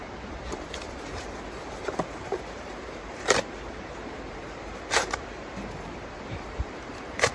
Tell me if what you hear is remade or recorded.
remade